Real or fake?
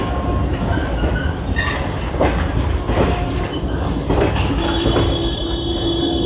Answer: real